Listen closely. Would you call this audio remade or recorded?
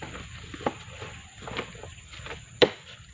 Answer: recorded